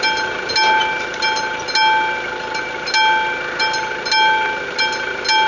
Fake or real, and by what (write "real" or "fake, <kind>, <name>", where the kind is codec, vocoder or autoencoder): real